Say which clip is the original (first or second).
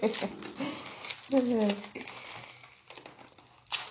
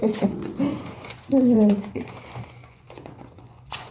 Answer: first